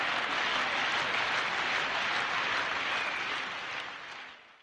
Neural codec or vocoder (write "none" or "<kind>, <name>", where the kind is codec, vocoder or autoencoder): none